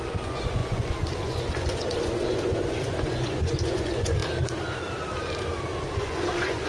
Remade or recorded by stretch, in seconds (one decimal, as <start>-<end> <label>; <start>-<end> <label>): 0.0-4.2 remade; 4.2-5.9 recorded; 5.9-6.7 remade